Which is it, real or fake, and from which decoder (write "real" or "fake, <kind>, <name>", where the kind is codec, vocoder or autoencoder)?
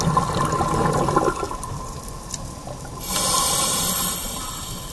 real